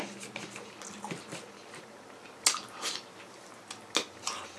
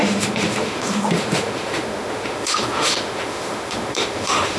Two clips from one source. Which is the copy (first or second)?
second